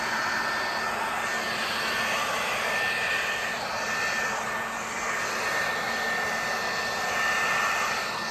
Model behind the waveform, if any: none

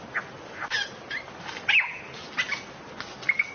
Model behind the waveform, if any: none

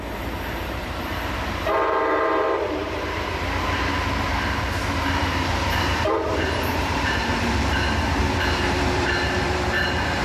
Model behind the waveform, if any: vocoder, BigVGAN v2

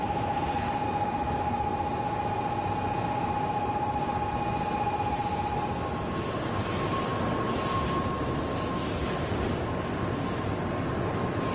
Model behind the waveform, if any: none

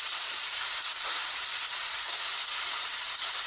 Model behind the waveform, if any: none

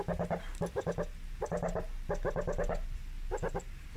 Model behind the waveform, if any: none